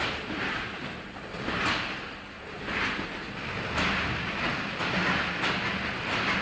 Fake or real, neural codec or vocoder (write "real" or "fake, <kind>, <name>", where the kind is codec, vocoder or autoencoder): real